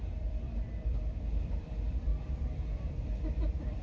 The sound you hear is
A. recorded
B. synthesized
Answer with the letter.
B